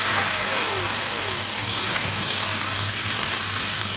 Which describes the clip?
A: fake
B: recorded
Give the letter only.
A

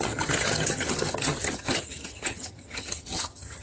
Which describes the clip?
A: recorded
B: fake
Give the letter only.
B